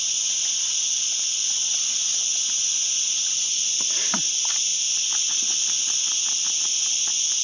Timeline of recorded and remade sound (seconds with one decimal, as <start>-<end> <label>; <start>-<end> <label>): 0.0-7.4 recorded